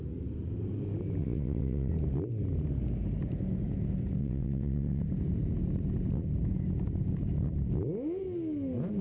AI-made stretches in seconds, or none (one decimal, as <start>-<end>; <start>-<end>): 1.2-1.9; 4.2-5.0